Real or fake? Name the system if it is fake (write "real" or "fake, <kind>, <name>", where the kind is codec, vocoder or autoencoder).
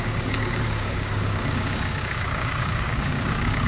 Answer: fake, codec, DAC